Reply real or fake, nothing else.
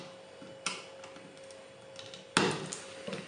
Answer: real